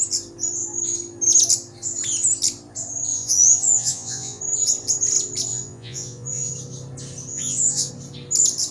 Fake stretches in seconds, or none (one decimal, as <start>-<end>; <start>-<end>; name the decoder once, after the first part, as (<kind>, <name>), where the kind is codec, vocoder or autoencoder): 3.1-4.4 (vocoder, Vocos); 5.5-6.5; 7.3-7.9